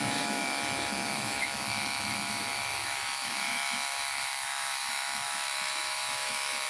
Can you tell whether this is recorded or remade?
remade